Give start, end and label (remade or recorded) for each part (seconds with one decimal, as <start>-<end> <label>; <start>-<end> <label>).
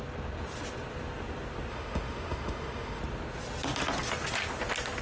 0.0-1.7 recorded; 1.7-3.0 remade; 3.0-5.0 recorded